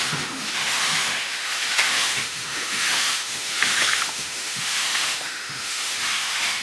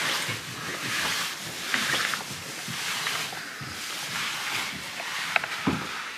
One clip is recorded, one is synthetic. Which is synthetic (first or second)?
first